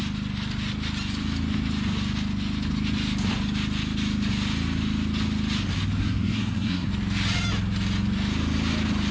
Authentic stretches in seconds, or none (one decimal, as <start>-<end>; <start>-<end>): 0.0-6.0; 6.9-9.1